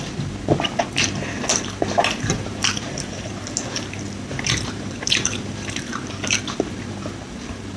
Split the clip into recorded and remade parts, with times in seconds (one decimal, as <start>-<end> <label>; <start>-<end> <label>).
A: 0.0-2.0 recorded; 2.0-3.4 remade; 3.4-4.3 recorded; 4.3-6.2 remade; 6.2-7.8 recorded